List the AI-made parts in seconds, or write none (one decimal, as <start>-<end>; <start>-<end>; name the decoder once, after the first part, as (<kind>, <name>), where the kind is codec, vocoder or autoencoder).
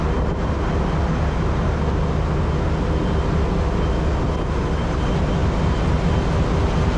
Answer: none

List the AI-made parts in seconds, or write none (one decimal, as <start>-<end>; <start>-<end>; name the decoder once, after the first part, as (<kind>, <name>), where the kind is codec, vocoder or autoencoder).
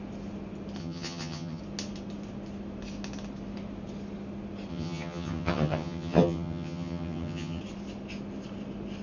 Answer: 0.8-1.6 (vocoder, HiFi-GAN); 4.7-7.6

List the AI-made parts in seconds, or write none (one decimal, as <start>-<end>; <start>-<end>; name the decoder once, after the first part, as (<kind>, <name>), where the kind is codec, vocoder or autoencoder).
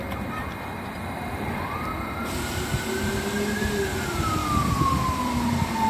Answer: none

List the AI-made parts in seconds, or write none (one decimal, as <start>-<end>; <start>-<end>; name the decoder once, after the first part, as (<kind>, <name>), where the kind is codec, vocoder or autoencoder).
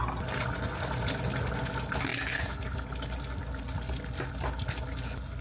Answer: none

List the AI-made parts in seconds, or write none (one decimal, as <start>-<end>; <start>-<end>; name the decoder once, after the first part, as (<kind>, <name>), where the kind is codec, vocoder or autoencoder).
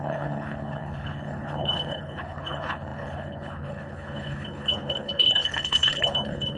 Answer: 0.0-6.6 (codec, HILCodec)